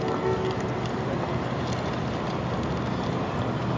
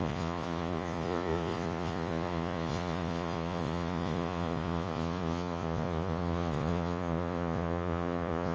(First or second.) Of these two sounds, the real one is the first